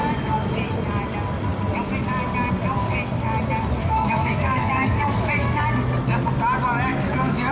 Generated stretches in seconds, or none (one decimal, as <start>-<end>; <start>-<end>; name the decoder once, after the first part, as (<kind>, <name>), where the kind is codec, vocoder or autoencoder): 3.8-5.3 (autoencoder, DAC-VAE); 6.9-7.5